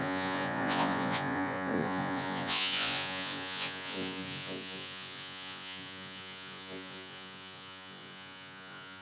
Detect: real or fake fake